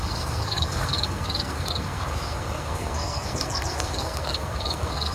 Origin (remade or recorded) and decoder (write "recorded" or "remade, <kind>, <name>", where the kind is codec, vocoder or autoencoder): remade, codec, SNAC